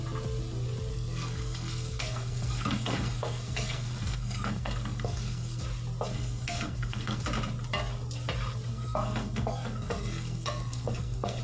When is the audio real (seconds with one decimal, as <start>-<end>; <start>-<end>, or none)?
0.0-0.9; 5.6-6.1; 7.2-8.7